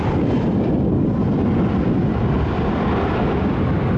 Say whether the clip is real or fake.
real